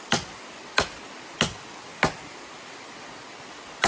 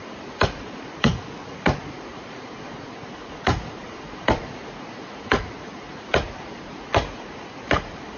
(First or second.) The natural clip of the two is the first